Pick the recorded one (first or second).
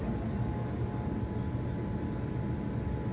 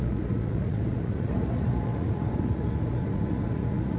first